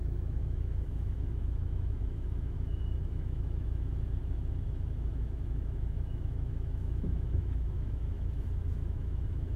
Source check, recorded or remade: remade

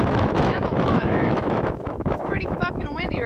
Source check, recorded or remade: remade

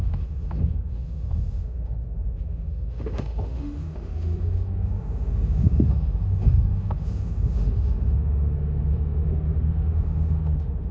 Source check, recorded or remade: remade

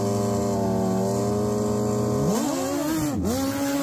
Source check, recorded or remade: recorded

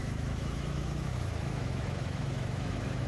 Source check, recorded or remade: remade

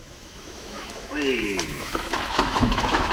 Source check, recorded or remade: remade